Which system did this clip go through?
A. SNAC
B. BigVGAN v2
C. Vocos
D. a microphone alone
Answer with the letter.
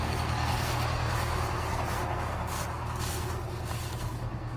A